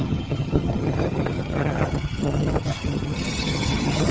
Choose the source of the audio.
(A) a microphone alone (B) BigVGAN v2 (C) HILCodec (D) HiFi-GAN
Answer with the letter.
D